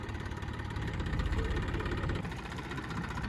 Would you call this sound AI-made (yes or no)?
yes